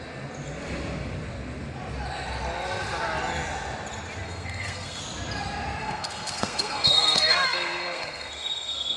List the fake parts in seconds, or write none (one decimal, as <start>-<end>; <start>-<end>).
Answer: 4.2-5.0; 5.8-9.0